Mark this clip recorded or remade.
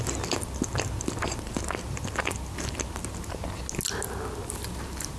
recorded